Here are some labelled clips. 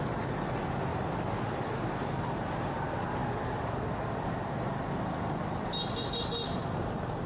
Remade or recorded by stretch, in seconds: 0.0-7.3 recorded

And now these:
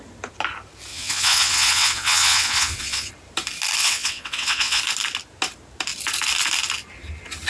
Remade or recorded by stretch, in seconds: 0.0-0.9 recorded; 0.9-3.1 remade; 3.1-3.8 recorded; 3.8-4.8 remade; 4.8-7.5 recorded

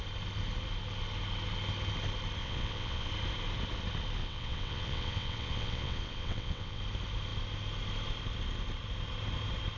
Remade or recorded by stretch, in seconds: 0.0-2.4 recorded; 2.4-3.1 remade; 3.1-4.2 recorded; 4.2-6.8 remade; 6.8-9.8 recorded

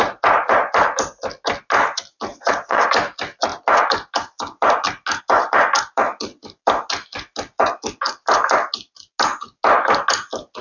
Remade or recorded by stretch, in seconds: 0.0-2.3 recorded; 2.3-2.9 remade; 2.9-10.6 recorded

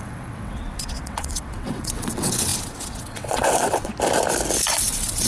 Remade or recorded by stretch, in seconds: 0.0-3.9 remade; 3.9-4.7 recorded; 4.7-5.3 remade

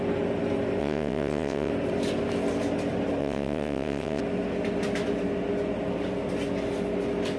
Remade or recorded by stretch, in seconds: 0.0-0.8 recorded; 0.8-1.7 remade; 1.7-3.2 recorded; 3.2-4.2 remade; 4.2-7.4 recorded

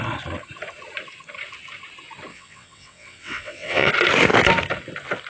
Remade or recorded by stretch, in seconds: 0.0-2.3 recorded; 2.3-3.9 remade; 3.9-5.3 recorded